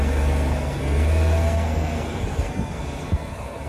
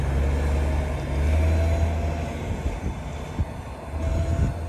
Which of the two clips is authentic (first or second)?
second